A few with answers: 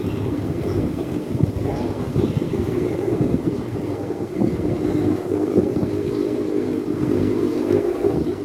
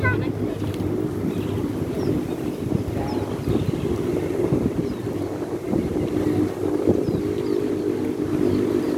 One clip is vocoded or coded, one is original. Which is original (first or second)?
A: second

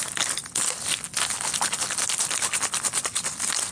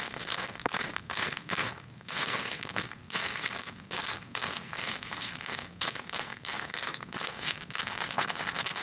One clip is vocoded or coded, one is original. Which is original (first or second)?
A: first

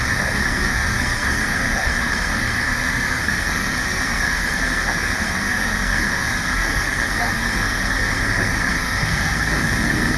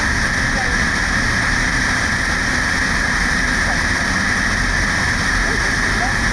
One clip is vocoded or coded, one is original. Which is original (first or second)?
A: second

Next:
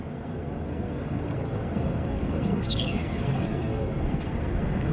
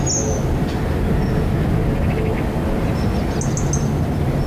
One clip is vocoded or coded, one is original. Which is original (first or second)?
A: second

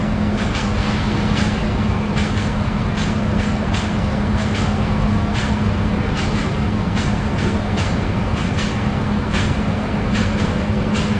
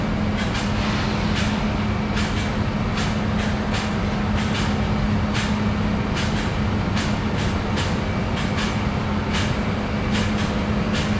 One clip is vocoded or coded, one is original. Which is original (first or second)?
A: second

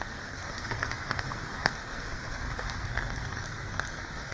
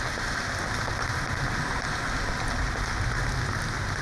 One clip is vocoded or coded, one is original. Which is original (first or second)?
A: second